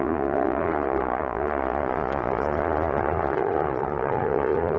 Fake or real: fake